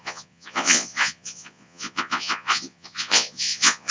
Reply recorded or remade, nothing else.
remade